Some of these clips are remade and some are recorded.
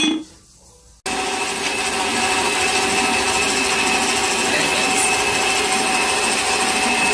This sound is recorded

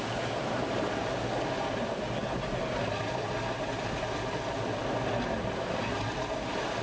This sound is recorded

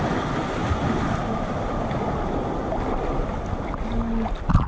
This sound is recorded